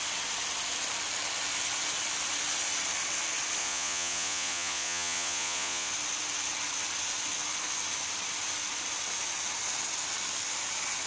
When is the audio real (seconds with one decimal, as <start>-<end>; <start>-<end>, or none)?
0.0-3.6; 5.9-11.1